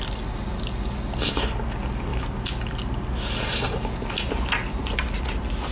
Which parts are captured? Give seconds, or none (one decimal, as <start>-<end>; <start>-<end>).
0.0-5.7